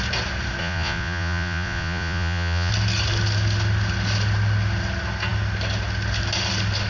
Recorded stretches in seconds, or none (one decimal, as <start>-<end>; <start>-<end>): 0.0-0.6; 2.7-6.9